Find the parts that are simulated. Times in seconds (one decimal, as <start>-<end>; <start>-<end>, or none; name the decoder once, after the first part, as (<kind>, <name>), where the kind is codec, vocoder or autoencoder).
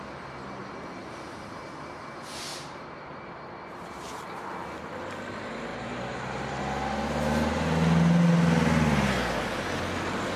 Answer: 1.0-2.0 (vocoder, BigVGAN v2); 2.5-4.2; 5.7-6.6